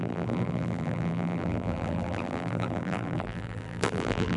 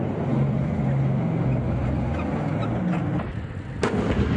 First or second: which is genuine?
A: second